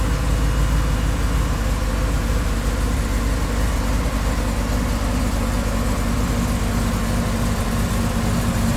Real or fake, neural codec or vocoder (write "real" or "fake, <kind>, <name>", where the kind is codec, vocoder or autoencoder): real